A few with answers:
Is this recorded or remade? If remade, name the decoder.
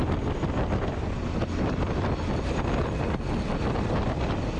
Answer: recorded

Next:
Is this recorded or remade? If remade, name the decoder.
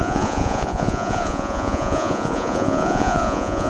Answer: remade, vocoder, Vocos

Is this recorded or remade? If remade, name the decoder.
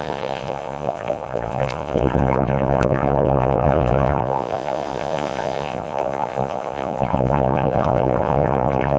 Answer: remade, vocoder, Vocos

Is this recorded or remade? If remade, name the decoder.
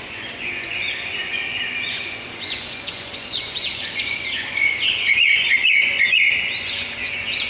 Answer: remade, vocoder, Vocos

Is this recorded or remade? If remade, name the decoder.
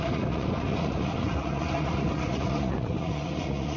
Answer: remade, vocoder, Vocos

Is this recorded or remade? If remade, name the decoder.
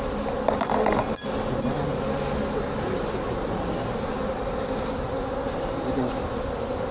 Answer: recorded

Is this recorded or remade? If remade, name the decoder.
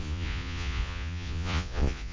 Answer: remade, vocoder, Vocos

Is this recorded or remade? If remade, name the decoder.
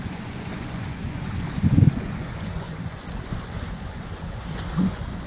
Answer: remade, vocoder, Vocos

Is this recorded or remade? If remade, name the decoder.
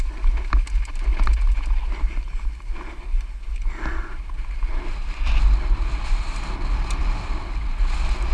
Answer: recorded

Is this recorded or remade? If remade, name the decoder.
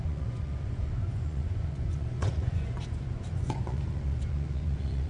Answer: remade, vocoder, Vocos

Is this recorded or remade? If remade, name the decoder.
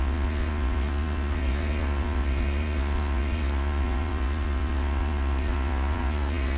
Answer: remade, vocoder, Vocos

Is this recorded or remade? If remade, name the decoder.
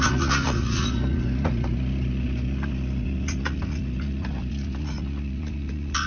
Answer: remade, vocoder, Vocos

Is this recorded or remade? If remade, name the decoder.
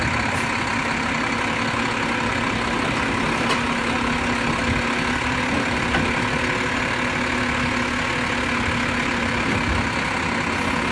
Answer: recorded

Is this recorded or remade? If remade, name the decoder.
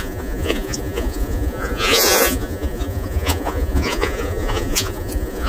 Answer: remade, vocoder, Vocos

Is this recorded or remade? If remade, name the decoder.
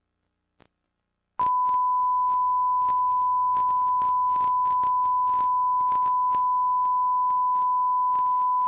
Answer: recorded